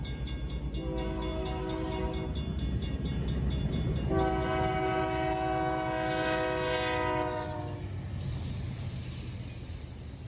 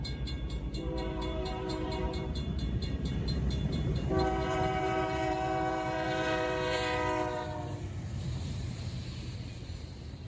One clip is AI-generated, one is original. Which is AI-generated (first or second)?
second